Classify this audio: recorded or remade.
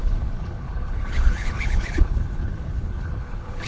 remade